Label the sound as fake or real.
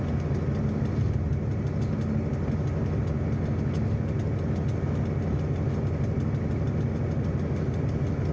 real